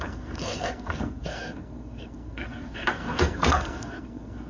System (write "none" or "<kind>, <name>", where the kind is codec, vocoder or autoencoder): codec, SNAC